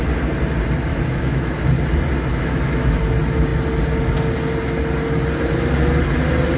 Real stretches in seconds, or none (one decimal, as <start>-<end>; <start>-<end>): 0.0-0.9; 1.6-2.3; 3.0-6.6